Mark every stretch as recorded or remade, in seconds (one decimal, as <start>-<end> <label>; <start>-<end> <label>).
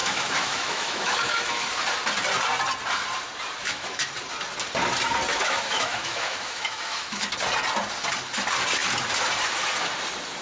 0.0-1.8 remade; 1.8-3.6 recorded; 3.6-4.1 remade; 4.1-5.3 recorded; 5.3-7.3 remade; 7.3-10.4 recorded